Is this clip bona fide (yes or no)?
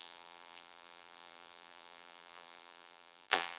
no